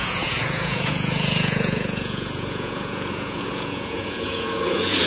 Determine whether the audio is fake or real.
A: fake